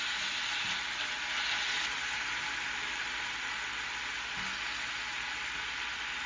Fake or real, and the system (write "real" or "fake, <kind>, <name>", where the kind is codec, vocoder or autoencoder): real